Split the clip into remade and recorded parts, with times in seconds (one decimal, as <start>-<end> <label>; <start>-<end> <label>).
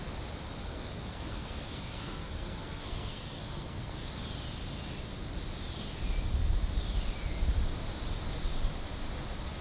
0.0-0.6 recorded; 0.6-4.1 remade; 4.1-9.6 recorded